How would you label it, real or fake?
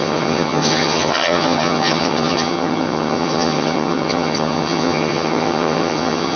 fake